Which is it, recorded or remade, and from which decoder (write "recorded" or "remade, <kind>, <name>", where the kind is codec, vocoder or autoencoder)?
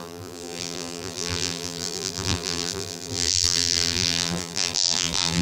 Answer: remade, vocoder, BigVGAN v2